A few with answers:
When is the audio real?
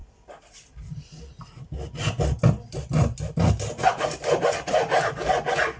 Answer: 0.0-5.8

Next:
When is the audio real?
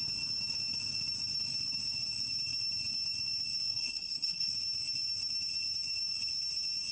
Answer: 0.0-3.7; 4.5-6.9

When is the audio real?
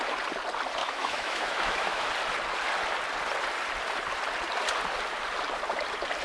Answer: 0.0-0.8; 2.1-6.2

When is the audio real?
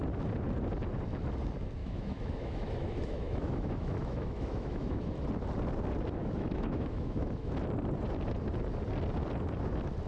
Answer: 0.0-1.8; 5.1-6.2; 7.5-10.1